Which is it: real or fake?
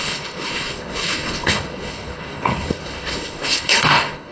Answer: fake